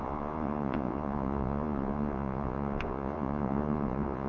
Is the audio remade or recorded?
remade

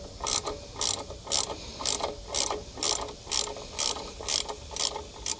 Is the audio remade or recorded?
recorded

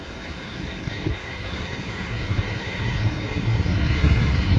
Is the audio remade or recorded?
remade